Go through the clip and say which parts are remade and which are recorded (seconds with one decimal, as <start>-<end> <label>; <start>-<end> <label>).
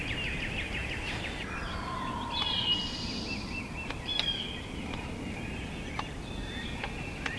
0.0-0.8 recorded; 0.8-5.2 remade; 5.2-7.4 recorded